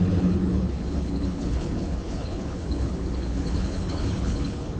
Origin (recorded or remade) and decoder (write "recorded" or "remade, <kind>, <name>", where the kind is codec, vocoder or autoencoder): remade, codec, HILCodec